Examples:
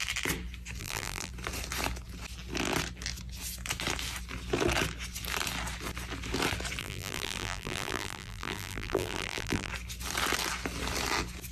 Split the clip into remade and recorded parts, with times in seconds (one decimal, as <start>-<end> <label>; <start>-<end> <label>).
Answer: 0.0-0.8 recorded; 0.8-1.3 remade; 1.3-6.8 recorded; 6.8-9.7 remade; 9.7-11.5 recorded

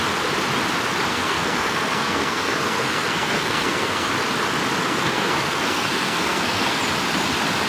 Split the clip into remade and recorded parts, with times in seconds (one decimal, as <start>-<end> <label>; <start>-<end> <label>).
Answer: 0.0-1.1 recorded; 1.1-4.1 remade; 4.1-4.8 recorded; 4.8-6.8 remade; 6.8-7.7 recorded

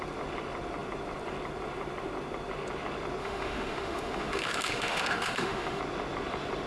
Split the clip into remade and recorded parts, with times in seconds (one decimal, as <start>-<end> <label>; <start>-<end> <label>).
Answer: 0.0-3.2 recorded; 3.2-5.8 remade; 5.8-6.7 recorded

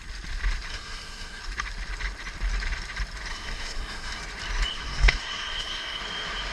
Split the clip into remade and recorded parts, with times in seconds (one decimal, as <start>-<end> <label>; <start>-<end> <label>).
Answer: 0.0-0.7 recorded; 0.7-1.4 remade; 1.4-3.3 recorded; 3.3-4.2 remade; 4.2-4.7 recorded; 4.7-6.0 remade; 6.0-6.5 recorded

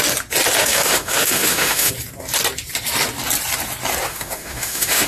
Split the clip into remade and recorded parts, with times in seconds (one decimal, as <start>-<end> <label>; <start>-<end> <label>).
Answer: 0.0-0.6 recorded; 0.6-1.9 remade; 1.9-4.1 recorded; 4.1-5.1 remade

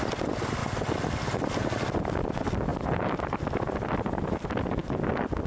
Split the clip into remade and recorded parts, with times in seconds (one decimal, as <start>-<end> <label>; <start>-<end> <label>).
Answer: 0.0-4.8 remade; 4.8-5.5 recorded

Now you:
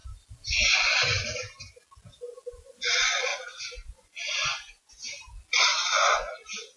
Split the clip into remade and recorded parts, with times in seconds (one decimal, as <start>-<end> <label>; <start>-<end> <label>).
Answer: 0.0-3.3 recorded; 3.3-4.9 remade; 4.9-5.7 recorded; 5.7-6.8 remade

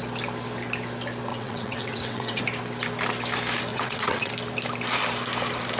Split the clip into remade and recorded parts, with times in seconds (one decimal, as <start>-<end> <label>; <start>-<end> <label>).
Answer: 0.0-1.3 recorded; 1.3-2.4 remade; 2.4-3.7 recorded; 3.7-4.3 remade; 4.3-5.8 recorded